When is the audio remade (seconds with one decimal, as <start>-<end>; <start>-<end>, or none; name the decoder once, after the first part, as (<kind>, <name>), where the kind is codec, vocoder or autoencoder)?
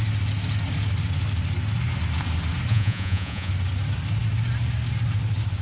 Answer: 2.7-3.5 (vocoder, Vocos)